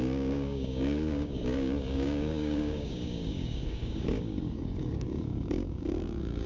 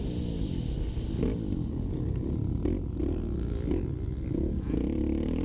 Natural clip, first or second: second